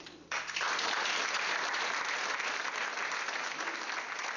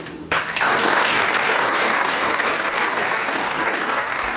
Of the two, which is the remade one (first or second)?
second